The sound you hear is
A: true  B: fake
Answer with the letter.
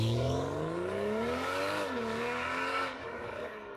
B